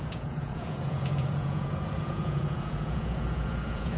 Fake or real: fake